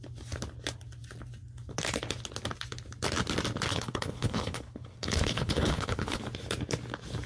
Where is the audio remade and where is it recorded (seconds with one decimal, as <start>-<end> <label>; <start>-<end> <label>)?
0.0-3.7 recorded; 3.7-6.2 remade; 6.2-7.3 recorded